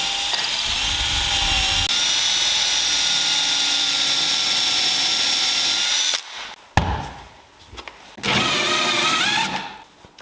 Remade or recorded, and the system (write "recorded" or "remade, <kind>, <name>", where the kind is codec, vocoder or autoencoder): recorded